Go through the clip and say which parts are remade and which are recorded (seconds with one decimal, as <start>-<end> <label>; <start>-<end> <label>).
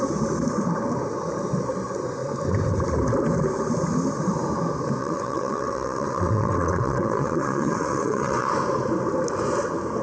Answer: 0.0-5.0 recorded; 5.0-8.5 remade; 8.5-10.0 recorded